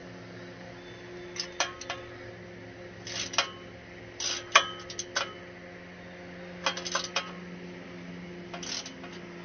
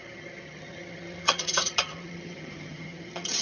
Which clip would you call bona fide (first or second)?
first